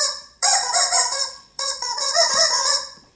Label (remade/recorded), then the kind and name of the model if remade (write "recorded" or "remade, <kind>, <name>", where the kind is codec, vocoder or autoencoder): remade, vocoder, Vocos